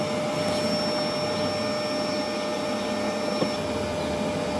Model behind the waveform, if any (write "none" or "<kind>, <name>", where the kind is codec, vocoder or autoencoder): none